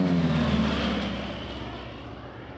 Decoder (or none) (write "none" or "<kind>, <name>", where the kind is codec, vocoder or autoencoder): none